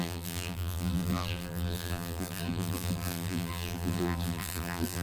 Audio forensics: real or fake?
fake